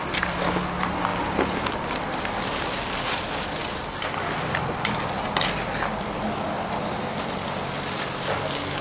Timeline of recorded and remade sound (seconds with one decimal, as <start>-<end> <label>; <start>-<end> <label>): 0.0-8.8 recorded